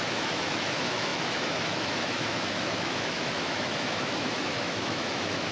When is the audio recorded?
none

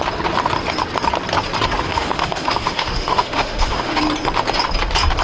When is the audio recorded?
0.0-1.9; 4.0-5.2